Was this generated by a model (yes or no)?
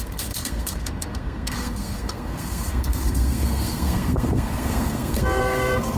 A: yes